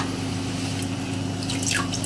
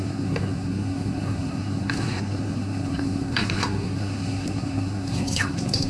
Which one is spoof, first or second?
second